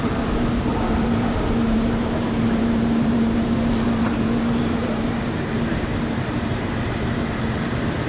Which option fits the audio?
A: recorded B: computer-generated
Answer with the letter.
B